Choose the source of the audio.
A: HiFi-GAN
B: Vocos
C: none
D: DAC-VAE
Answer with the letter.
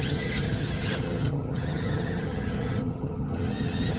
A